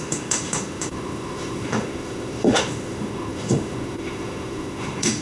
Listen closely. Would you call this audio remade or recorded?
remade